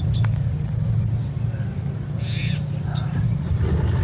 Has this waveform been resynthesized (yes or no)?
no